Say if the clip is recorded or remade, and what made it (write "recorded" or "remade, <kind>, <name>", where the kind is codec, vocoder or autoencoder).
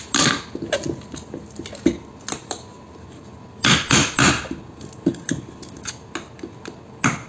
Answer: recorded